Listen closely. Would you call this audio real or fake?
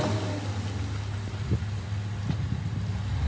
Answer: real